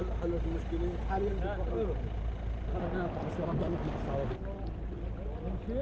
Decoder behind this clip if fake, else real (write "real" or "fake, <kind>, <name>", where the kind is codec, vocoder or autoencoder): real